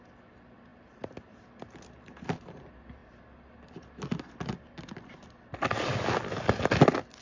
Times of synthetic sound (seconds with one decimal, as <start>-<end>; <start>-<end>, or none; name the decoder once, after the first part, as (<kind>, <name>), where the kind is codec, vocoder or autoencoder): none